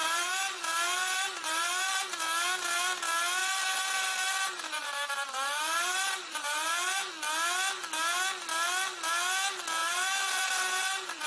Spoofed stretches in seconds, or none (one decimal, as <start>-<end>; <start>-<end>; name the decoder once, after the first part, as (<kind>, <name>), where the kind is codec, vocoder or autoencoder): 0.0-2.0 (vocoder, BigVGAN v2); 3.4-7.1; 9.8-11.3